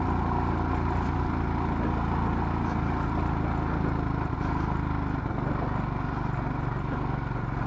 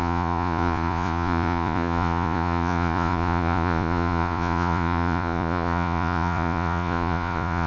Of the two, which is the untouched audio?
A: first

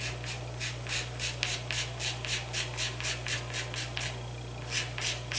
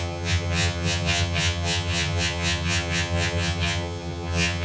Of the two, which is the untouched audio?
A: first